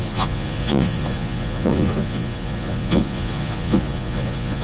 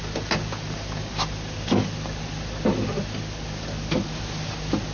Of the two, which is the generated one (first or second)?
first